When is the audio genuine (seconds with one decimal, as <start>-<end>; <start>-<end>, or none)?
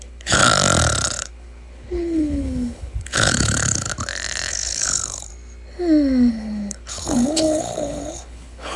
0.4-1.2; 3.9-4.5; 5.3-6.3